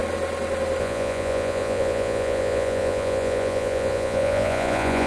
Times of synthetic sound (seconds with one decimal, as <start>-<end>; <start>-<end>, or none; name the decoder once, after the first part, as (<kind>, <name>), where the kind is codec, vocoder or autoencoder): 0.8-5.1 (vocoder, Vocos)